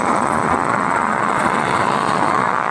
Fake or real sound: fake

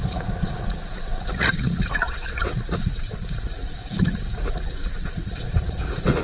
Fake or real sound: fake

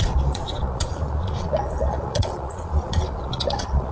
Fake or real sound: fake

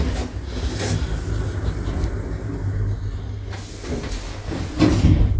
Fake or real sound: real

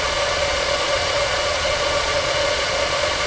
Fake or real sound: fake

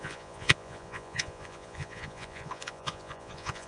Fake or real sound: fake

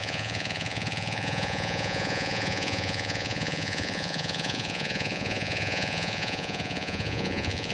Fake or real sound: fake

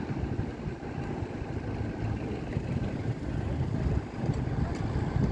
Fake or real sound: real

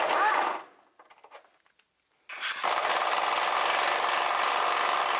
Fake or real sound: real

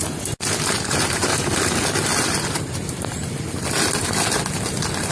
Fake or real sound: real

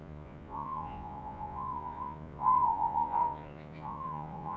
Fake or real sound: fake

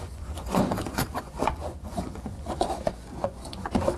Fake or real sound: fake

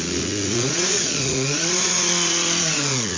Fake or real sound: fake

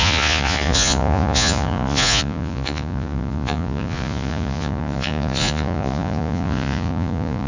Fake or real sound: fake